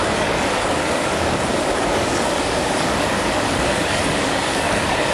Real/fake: fake